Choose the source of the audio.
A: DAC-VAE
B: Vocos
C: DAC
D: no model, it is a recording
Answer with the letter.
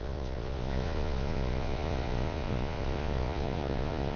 B